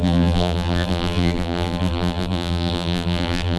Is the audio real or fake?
fake